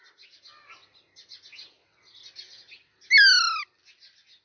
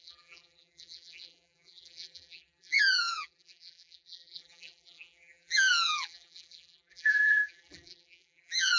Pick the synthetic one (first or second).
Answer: second